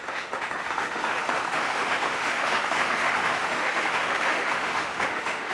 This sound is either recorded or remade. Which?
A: remade